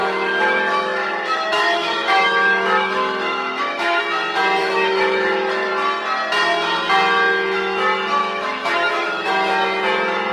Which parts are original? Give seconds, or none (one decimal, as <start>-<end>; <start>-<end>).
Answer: 4.0-4.6; 5.7-8.2; 9.3-10.3